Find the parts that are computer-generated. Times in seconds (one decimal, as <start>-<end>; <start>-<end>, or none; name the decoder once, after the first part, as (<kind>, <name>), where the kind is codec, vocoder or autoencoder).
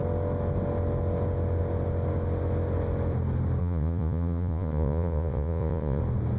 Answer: 3.6-6.0 (vocoder, Vocos)